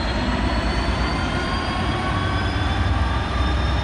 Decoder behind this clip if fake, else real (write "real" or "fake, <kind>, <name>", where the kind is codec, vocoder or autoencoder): fake, vocoder, BigVGAN v2